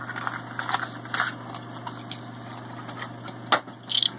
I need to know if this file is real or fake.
real